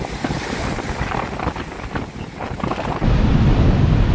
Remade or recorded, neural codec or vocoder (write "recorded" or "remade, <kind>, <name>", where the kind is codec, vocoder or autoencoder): recorded